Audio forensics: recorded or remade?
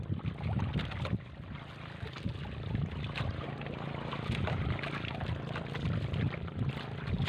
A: recorded